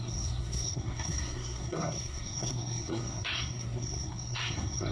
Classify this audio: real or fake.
fake